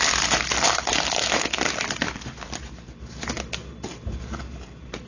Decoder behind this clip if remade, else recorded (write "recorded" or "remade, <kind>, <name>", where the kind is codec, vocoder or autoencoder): recorded